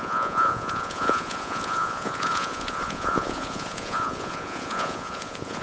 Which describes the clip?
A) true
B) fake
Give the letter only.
B